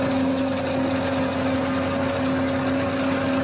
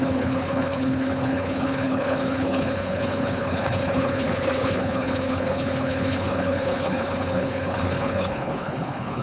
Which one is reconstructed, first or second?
second